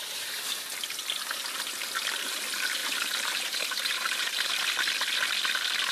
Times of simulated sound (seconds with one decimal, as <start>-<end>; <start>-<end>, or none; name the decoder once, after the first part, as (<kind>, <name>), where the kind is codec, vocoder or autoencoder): 2.8-4.5 (vocoder, BigVGAN v2)